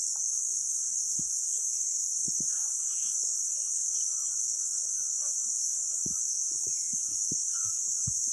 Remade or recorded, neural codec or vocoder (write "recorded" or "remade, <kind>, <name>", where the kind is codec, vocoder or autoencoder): remade, codec, DAC